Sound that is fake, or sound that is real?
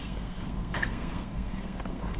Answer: fake